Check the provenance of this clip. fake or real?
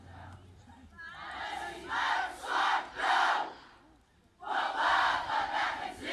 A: real